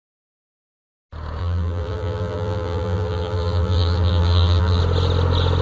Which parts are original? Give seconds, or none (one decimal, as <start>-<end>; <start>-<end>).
0.0-1.4; 4.8-5.6